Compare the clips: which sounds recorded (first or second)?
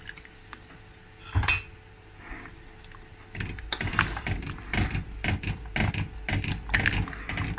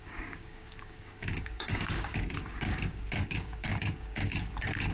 first